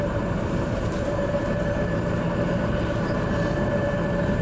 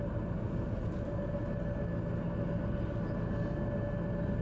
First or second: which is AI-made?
first